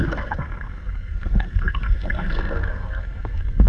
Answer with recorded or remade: remade